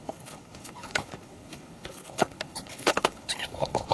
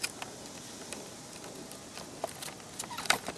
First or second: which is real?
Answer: second